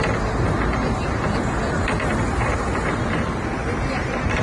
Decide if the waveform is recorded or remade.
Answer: recorded